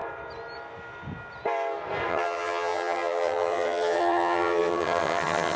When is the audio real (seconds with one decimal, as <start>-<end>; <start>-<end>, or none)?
0.0-2.1

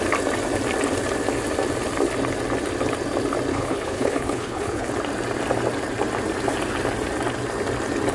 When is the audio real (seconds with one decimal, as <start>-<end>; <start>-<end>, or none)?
0.0-3.5; 4.9-8.1

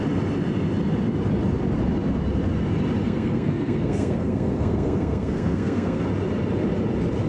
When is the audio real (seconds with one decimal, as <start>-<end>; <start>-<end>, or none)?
0.0-3.0; 6.0-7.3

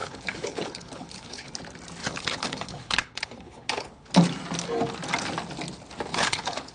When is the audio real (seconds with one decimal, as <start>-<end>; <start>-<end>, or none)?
1.5-2.0; 4.1-6.1

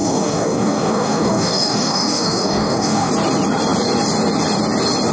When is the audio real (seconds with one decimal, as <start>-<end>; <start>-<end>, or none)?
3.1-5.1

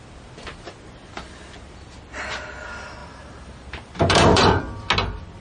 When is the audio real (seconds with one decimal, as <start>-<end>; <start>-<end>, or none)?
0.0-3.0; 4.6-5.4